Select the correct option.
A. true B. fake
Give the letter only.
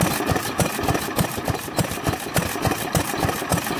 A